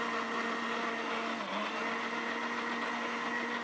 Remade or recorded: recorded